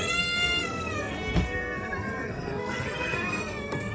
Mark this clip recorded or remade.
remade